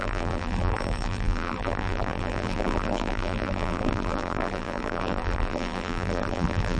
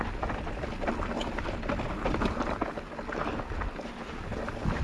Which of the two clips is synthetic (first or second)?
first